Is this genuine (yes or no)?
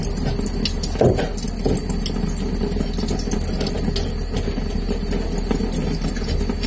yes